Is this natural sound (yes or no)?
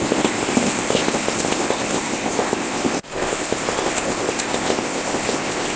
no